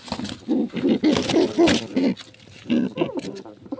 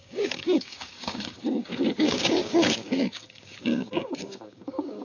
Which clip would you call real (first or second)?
first